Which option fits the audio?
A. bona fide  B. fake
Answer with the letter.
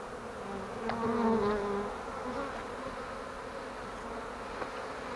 A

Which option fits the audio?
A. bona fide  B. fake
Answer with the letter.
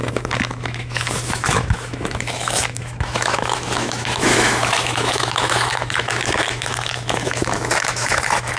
B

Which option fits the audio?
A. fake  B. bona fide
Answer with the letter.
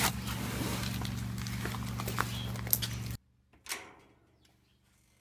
B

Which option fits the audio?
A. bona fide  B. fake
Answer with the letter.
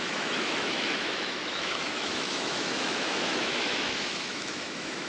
B